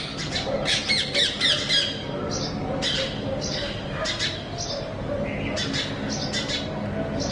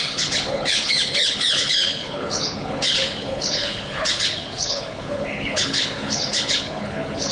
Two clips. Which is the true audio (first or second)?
first